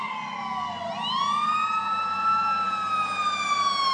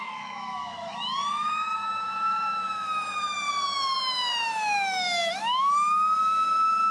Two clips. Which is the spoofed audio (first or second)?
second